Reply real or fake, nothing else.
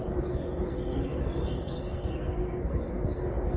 fake